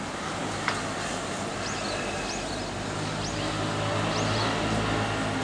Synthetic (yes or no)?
no